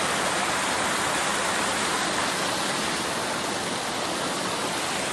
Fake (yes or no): no